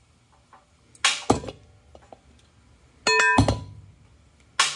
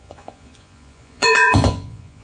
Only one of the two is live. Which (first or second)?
first